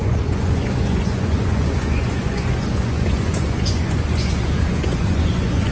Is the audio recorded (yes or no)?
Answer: no